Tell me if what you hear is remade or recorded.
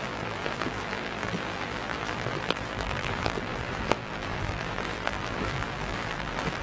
remade